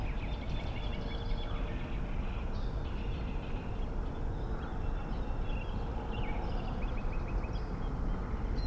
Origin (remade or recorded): recorded